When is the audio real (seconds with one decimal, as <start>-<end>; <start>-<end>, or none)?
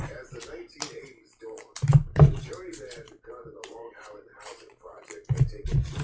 0.0-1.7; 5.0-6.0